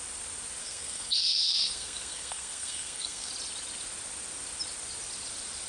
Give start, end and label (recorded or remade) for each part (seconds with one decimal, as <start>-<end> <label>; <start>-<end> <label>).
0.0-0.6 recorded; 0.6-3.3 remade; 3.3-5.7 recorded